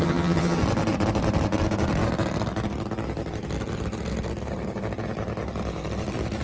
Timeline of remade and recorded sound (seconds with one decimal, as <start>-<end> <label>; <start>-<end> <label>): 0.0-0.6 remade; 0.6-6.4 recorded